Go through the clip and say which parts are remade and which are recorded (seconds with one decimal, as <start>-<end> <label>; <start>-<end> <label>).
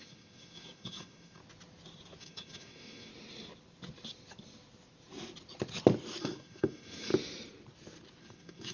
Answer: 0.0-1.4 remade; 1.4-2.2 recorded; 2.2-3.1 remade; 3.1-6.2 recorded; 6.2-7.1 remade; 7.1-8.2 recorded; 8.2-8.7 remade